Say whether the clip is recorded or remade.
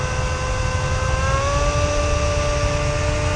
recorded